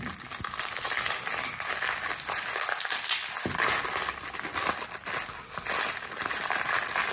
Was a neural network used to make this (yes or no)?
yes